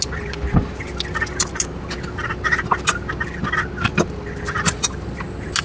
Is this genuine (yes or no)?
yes